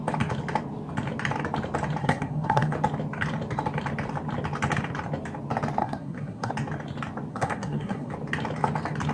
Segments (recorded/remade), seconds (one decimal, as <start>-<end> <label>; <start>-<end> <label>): 0.0-2.0 recorded; 2.0-2.7 remade; 2.7-5.8 recorded; 5.8-6.5 remade; 6.5-7.3 recorded; 7.3-8.1 remade; 8.1-9.1 recorded